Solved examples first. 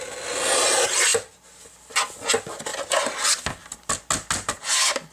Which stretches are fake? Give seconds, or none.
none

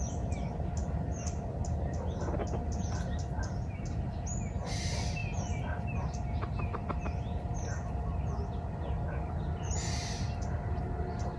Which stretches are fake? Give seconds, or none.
none

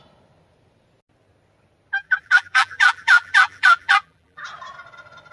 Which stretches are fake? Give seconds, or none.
2.0-4.4 (vocoder, BigVGAN v2)

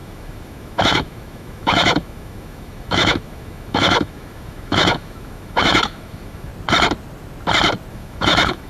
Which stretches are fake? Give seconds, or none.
0.0-6.5 (autoencoder, DAC-VAE); 7.9-8.7